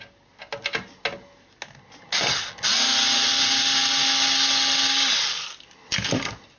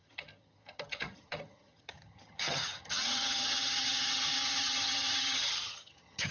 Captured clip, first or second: first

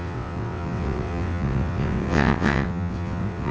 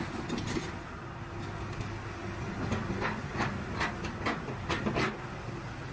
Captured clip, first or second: second